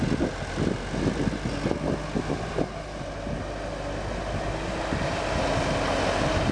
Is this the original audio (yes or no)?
yes